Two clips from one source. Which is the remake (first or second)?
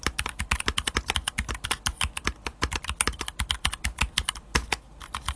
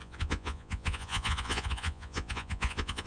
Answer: second